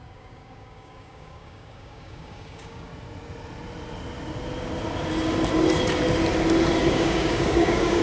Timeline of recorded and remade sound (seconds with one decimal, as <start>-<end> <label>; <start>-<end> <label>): 0.0-2.9 remade; 2.9-6.9 recorded; 6.9-8.0 remade